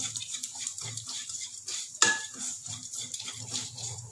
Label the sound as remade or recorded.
remade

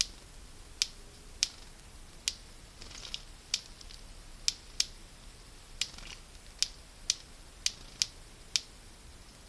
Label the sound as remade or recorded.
recorded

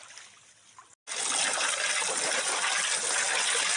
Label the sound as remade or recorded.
recorded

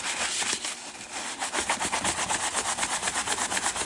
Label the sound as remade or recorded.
recorded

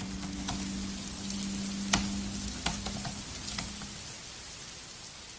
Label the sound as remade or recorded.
recorded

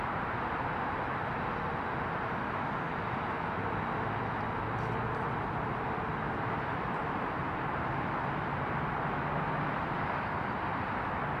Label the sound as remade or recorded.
recorded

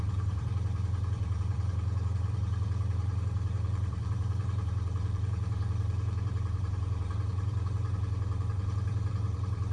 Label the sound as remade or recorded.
remade